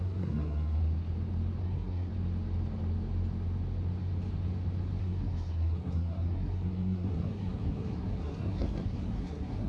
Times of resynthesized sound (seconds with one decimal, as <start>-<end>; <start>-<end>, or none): 0.0-0.8; 1.6-2.1; 5.0-9.7